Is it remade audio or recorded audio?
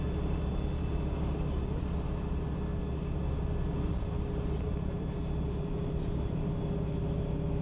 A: recorded